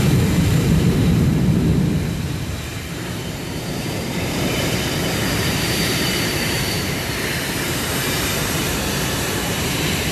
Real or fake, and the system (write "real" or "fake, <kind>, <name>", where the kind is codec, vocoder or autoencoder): fake, vocoder, BigVGAN v2